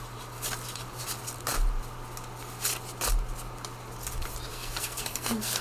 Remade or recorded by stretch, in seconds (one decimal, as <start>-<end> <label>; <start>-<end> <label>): 0.0-4.5 recorded; 4.5-5.6 remade